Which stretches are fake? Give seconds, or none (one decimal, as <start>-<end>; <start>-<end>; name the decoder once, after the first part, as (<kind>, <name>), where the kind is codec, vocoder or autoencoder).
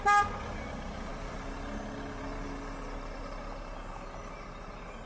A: none